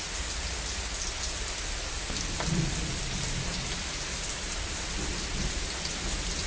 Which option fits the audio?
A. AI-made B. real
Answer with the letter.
B